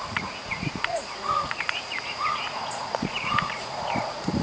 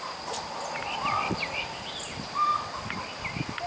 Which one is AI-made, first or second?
first